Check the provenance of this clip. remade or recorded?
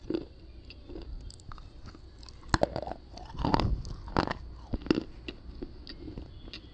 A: recorded